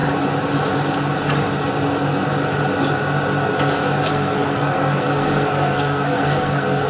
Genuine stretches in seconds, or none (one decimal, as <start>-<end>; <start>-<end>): 0.0-4.1